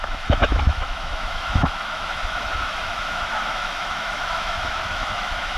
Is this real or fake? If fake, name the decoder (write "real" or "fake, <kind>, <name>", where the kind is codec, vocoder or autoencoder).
fake, autoencoder, DAC-VAE